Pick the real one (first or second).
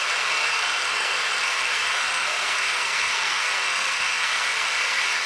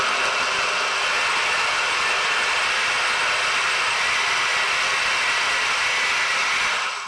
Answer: second